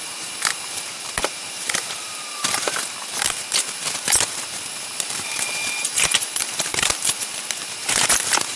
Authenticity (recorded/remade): remade